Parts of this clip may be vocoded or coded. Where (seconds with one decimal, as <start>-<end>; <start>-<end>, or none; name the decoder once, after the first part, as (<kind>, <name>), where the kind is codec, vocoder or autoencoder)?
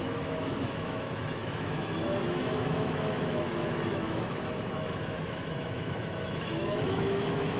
0.0-7.6 (autoencoder, DAC-VAE)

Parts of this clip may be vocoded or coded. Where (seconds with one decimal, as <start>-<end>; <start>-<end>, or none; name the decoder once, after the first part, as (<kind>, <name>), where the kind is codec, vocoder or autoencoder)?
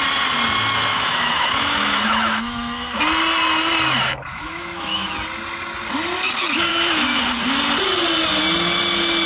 0.9-3.0 (autoencoder, DAC-VAE); 4.3-5.1; 6.7-7.2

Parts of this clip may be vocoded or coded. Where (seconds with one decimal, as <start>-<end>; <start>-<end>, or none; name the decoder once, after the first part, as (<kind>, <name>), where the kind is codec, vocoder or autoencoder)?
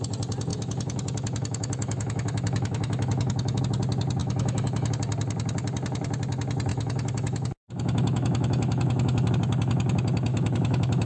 0.5-3.6 (autoencoder, DAC-VAE); 4.2-4.9; 6.7-9.3; 10.3-11.1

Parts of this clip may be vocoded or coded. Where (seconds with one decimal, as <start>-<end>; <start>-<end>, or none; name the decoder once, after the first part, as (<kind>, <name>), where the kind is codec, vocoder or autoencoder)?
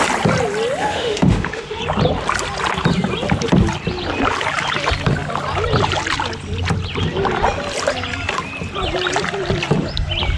0.8-1.8 (autoencoder, DAC-VAE)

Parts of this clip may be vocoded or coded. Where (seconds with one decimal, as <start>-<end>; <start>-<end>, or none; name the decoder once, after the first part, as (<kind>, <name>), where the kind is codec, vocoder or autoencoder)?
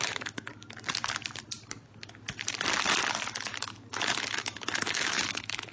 0.0-0.5 (autoencoder, DAC-VAE); 3.9-5.7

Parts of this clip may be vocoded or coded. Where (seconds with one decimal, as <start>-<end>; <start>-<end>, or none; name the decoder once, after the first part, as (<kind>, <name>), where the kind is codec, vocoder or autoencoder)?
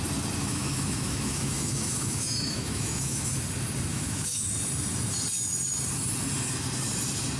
0.4-3.3 (autoencoder, DAC-VAE); 3.9-4.5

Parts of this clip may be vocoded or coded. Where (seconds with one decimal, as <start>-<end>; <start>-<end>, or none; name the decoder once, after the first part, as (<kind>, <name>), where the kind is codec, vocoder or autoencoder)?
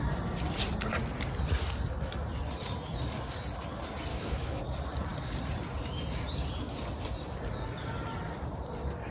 4.1-4.6 (autoencoder, DAC-VAE)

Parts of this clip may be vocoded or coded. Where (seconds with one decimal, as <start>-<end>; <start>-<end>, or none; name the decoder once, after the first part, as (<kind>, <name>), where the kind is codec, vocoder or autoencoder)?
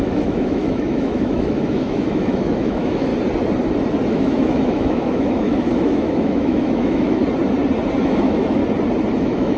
0.0-3.1 (autoencoder, DAC-VAE); 4.1-7.2; 8.0-8.6; 9.2-9.6